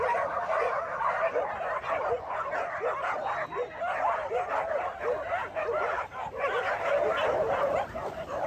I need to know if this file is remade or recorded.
recorded